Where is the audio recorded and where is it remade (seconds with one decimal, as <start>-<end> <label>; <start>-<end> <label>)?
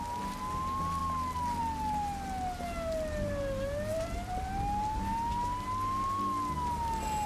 0.0-3.9 recorded; 3.9-4.5 remade; 4.5-7.3 recorded